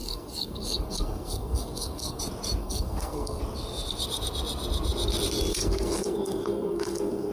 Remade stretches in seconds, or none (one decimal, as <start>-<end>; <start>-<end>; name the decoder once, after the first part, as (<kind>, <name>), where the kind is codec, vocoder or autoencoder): 0.0-2.2 (codec, SNAC); 2.6-3.4; 5.5-7.3